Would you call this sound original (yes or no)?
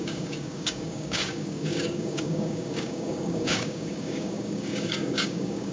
no